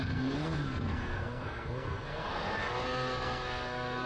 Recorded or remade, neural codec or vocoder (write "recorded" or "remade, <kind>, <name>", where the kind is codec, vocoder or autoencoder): remade, codec, SNAC